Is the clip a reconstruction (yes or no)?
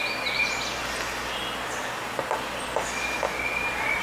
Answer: no